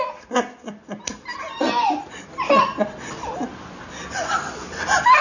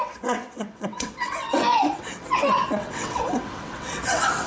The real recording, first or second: first